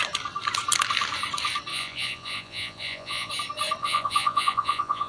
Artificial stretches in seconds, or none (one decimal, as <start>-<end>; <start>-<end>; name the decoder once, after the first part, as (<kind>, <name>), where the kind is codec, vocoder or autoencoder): 1.7-3.3 (vocoder, Vocos); 3.8-5.1